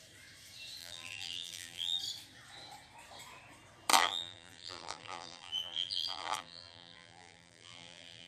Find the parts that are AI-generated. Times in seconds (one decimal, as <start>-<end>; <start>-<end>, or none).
0.8-2.0; 3.9-8.3